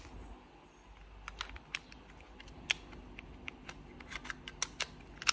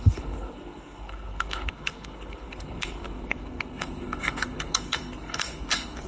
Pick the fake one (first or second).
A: second